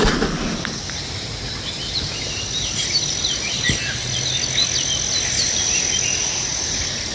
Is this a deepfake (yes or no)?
no